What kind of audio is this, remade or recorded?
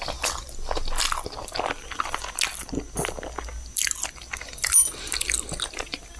recorded